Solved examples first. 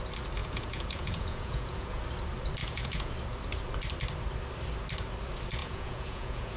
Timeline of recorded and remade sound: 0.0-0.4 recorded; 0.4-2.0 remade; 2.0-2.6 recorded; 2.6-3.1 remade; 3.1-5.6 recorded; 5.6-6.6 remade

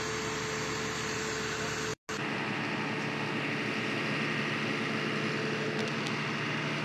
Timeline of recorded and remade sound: 0.0-6.8 recorded

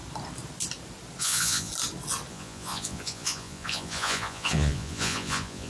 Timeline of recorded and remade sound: 0.0-1.2 recorded; 1.2-1.7 remade; 1.7-2.3 recorded; 2.3-5.7 remade

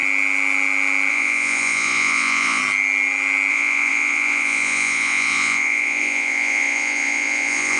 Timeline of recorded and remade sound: 0.0-1.1 recorded; 1.1-2.6 remade; 2.6-3.5 recorded; 3.5-7.8 remade

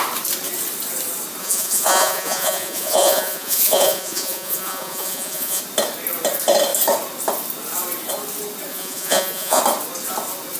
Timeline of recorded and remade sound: 0.0-1.4 recorded; 1.4-5.6 remade; 5.6-8.7 recorded; 8.7-9.6 remade; 9.6-10.6 recorded

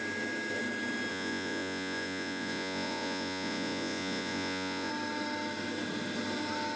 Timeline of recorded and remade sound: 0.0-1.1 recorded; 1.1-4.9 remade; 4.9-6.8 recorded

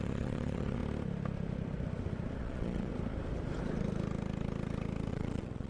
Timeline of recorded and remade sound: 0.0-0.8 remade; 0.8-2.4 recorded; 2.4-2.9 remade; 2.9-5.1 recorded; 5.1-5.7 remade